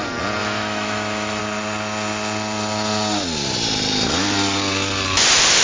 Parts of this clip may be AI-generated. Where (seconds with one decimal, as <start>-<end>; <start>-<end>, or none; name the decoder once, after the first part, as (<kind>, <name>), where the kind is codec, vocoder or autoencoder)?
0.4-1.4 (autoencoder, DAC-VAE)